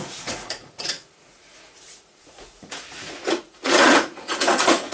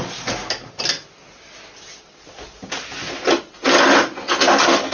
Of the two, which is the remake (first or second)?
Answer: first